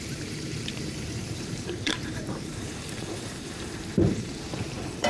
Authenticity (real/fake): fake